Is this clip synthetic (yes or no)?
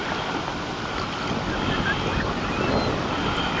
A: no